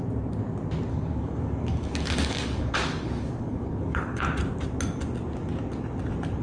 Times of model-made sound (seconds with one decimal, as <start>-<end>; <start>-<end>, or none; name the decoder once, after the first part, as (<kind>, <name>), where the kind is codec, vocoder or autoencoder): 0.9-4.2 (codec, DAC)